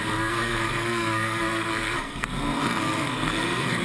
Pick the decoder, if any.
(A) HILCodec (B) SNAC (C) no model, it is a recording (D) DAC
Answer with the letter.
B